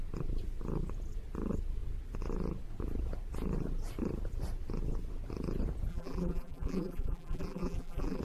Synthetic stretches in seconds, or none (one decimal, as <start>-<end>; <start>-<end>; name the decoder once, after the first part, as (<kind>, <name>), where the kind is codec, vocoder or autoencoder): 5.9-8.2 (vocoder, BigVGAN v2)